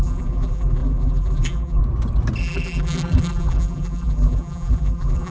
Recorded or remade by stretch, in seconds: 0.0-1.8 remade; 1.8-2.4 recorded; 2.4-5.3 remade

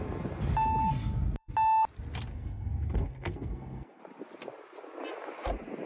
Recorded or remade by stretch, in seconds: 0.0-2.3 recorded; 2.3-4.0 remade; 4.0-5.9 recorded

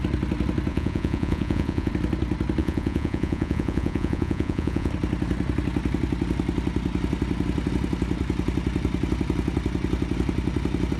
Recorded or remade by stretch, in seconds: 0.0-0.7 recorded; 0.7-1.9 remade; 1.9-2.6 recorded; 2.6-4.9 remade; 4.9-11.0 recorded

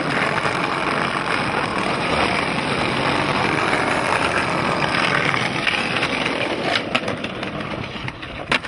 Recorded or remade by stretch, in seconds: 0.0-1.7 recorded; 1.7-2.2 remade; 2.2-8.7 recorded

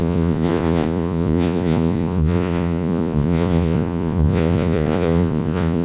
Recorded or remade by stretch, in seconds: 0.0-5.8 remade

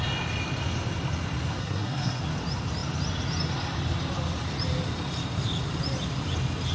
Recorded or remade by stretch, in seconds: 0.0-1.6 recorded; 1.6-2.2 remade; 2.2-6.7 recorded